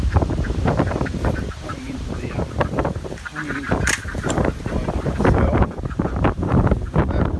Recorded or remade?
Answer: remade